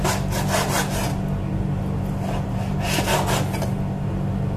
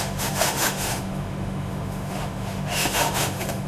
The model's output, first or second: second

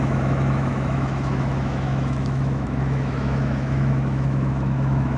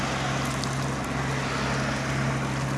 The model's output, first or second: first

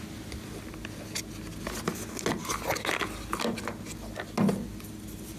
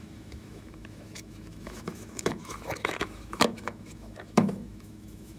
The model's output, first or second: second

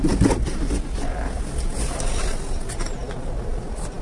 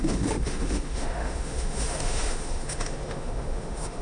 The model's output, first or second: second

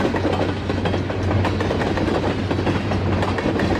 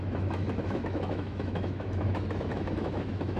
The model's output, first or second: second